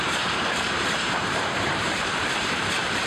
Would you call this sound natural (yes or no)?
no